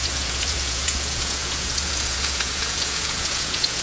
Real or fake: fake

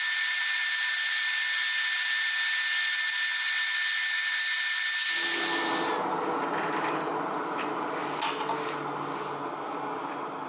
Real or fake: real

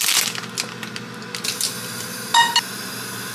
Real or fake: real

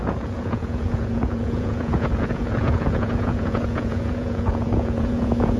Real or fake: fake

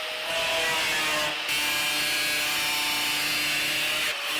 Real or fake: real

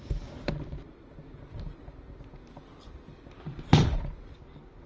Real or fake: real